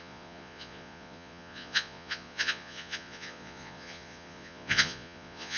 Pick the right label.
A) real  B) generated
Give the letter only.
B